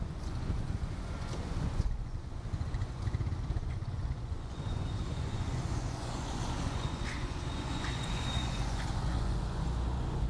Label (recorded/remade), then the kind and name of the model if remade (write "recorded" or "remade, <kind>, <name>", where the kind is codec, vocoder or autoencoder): remade, vocoder, Vocos